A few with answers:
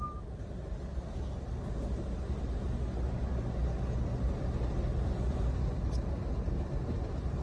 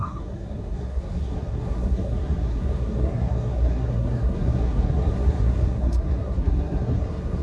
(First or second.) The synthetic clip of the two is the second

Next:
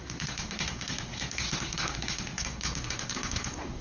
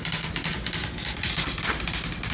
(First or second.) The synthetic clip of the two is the first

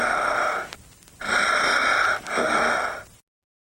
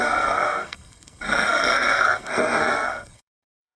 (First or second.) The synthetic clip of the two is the second